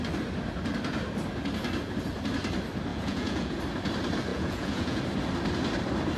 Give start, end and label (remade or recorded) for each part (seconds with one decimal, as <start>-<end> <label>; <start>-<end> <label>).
0.0-2.9 recorded; 2.9-3.6 remade; 3.6-4.3 recorded; 4.3-5.0 remade; 5.0-6.2 recorded